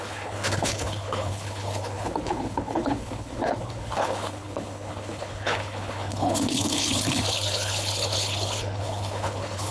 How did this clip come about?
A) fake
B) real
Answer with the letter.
A